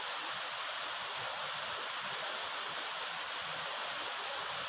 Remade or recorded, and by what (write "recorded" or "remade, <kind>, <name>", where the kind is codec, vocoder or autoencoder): recorded